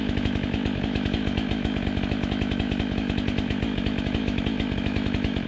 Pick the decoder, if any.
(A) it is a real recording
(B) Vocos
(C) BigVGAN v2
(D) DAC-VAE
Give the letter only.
D